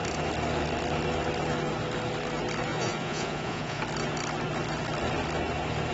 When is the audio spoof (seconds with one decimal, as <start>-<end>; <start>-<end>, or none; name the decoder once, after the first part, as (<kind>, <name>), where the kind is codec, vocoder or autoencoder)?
2.7-3.8 (vocoder, Vocos)